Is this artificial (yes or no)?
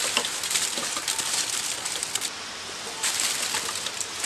no